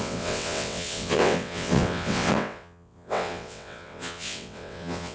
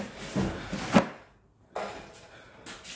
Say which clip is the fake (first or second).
first